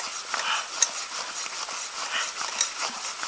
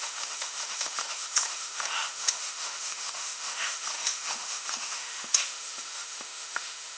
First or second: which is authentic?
first